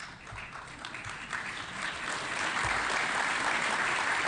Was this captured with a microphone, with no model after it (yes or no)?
no